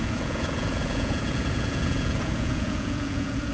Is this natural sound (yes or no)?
no